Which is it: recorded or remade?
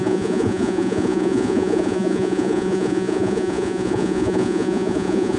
remade